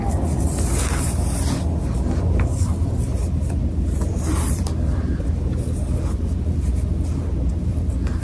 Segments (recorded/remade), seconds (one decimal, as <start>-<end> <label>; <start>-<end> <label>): 0.0-3.1 recorded; 3.1-5.3 remade; 5.3-7.7 recorded; 7.7-8.2 remade